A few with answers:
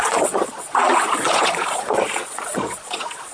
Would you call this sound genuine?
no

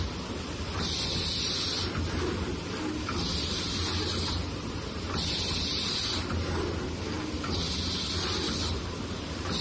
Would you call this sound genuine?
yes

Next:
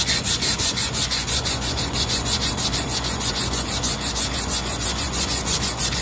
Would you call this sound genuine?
no